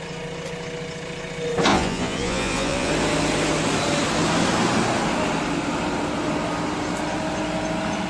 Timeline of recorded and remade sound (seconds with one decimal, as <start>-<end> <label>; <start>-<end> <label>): 0.0-1.7 recorded; 1.7-2.9 remade; 2.9-8.1 recorded